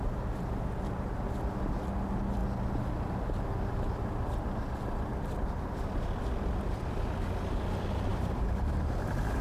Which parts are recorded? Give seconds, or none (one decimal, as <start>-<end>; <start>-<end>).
0.0-8.1